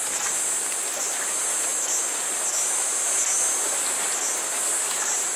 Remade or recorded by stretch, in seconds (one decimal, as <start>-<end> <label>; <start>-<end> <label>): 0.0-5.4 recorded